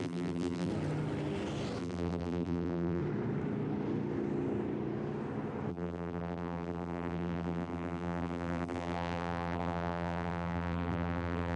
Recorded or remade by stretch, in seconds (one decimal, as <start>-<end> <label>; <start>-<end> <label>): 0.0-0.7 remade; 0.7-1.8 recorded; 1.8-3.0 remade; 3.0-5.7 recorded; 5.7-11.6 remade